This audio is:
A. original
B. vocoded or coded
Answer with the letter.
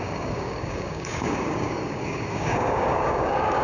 B